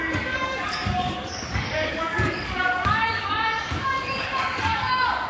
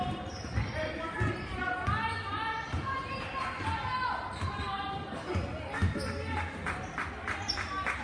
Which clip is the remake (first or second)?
first